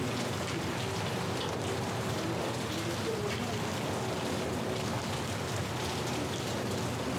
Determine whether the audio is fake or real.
real